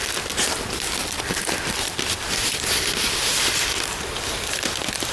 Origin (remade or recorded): recorded